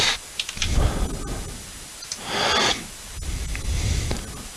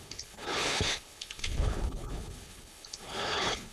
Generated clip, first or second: second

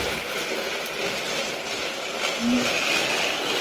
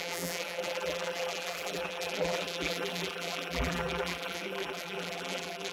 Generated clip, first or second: second